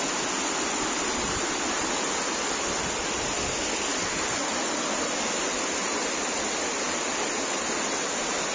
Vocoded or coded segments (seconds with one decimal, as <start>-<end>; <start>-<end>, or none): none